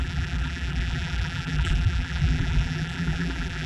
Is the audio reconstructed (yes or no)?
yes